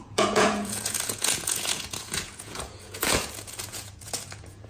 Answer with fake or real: fake